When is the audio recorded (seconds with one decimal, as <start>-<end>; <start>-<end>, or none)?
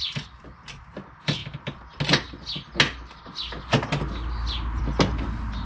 0.0-5.7